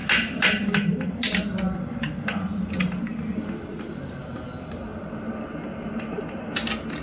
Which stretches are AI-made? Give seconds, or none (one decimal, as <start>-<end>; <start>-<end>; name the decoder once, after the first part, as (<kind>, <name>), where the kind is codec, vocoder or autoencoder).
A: none